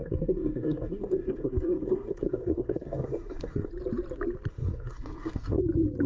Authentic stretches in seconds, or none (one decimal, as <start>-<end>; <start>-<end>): 3.7-4.5; 5.6-6.1